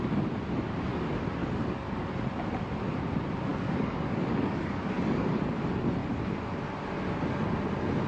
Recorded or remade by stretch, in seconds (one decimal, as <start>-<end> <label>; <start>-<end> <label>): 0.0-1.4 recorded; 1.4-2.1 remade; 2.1-3.5 recorded; 3.5-5.4 remade; 5.4-8.1 recorded